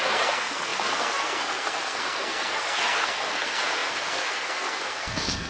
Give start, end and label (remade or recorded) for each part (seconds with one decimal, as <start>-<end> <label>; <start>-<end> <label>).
0.0-5.5 remade